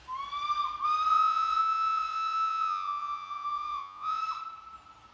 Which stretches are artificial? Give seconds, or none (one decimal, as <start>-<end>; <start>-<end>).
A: 1.1-4.2